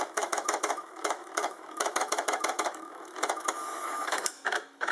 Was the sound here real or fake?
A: fake